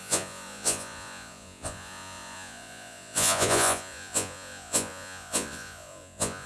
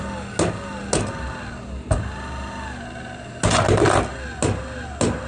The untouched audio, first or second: second